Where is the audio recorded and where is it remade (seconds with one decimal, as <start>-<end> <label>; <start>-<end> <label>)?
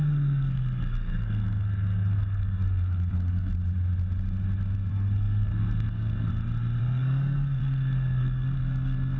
0.0-3.5 remade; 3.5-4.9 recorded; 4.9-6.3 remade; 6.3-6.8 recorded; 6.8-9.2 remade